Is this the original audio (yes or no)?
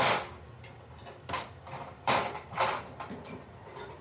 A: yes